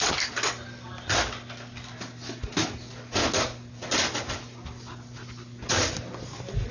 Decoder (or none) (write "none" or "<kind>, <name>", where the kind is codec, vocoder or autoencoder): none